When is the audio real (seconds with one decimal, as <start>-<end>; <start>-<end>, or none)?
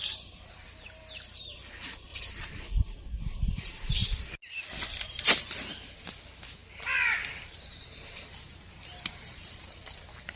0.0-2.1; 2.8-10.4